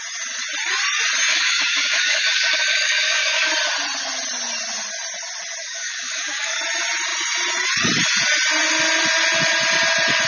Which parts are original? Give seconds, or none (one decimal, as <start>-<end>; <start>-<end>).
0.0-1.3; 3.5-5.6; 6.6-10.3